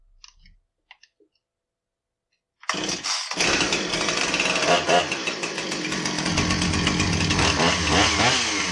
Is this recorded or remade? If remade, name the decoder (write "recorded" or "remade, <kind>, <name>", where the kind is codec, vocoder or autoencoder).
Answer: recorded